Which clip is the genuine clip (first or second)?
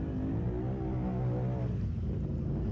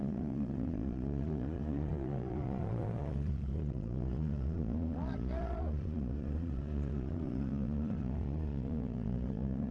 first